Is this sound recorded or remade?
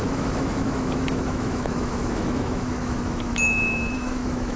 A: remade